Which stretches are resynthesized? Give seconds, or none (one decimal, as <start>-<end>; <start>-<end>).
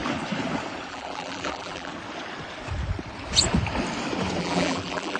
0.9-1.9; 4.4-5.2